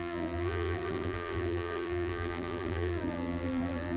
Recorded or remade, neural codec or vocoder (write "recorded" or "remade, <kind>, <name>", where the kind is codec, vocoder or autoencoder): remade, vocoder, BigVGAN v2